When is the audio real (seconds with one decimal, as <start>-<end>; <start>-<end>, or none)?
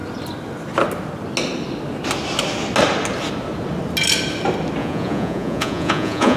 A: 0.0-4.8